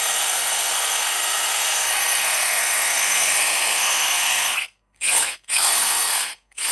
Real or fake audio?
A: fake